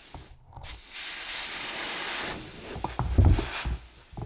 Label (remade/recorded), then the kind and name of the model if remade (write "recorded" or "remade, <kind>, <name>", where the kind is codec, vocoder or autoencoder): recorded